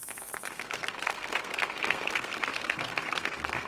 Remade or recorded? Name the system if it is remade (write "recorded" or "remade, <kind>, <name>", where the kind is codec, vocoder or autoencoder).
remade, codec, SNAC